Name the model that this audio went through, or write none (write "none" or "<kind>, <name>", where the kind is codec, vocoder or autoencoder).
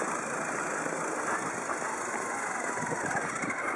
none